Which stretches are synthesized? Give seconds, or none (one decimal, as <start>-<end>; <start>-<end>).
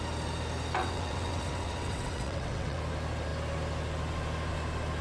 0.8-2.8